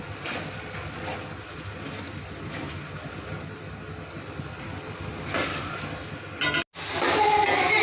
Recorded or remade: recorded